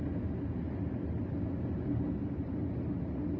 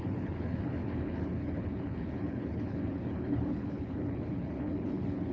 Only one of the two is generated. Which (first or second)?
second